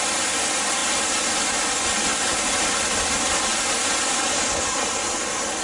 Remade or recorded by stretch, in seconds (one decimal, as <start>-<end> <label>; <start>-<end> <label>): 0.0-5.6 recorded